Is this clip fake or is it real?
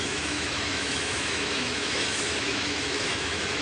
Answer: fake